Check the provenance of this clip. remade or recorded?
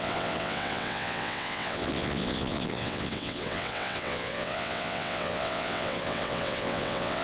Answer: remade